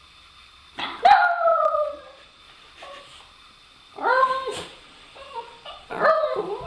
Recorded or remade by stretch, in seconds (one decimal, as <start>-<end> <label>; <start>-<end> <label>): 0.0-1.5 recorded; 1.5-2.4 remade; 2.4-4.5 recorded; 4.5-6.0 remade; 6.0-6.7 recorded